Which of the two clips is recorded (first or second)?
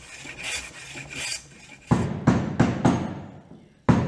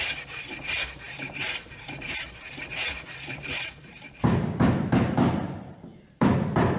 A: first